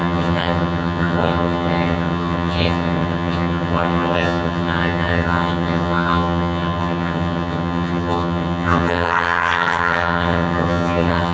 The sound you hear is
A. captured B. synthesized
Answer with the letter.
B